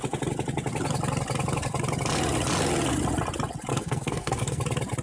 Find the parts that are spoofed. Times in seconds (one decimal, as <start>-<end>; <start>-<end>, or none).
3.7-4.6